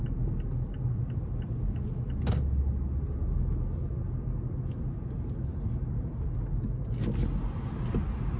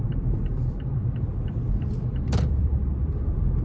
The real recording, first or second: first